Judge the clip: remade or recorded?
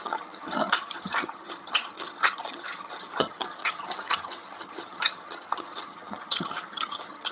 remade